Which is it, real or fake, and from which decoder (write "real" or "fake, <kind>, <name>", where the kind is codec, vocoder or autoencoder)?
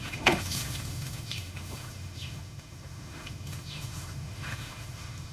fake, autoencoder, DAC-VAE